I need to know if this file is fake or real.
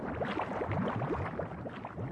real